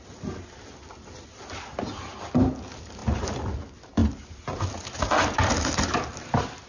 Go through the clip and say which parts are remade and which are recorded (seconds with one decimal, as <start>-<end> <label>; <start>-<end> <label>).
0.0-6.7 recorded